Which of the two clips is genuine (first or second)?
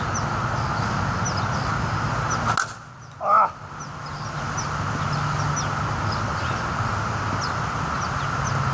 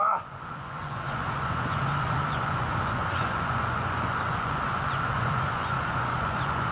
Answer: first